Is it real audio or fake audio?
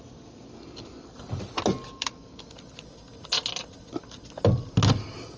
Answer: real